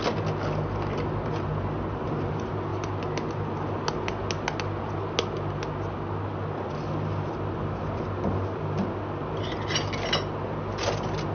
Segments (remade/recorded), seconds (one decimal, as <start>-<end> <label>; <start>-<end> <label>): 0.0-11.3 recorded